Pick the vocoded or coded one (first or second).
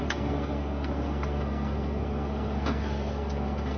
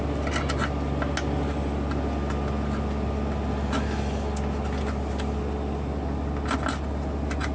first